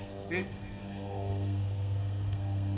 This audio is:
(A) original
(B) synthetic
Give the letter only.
B